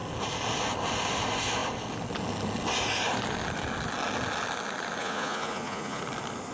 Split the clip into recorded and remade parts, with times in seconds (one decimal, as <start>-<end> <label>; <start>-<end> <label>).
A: 0.0-5.0 recorded; 5.0-6.0 remade; 6.0-6.5 recorded